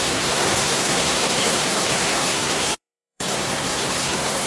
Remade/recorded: remade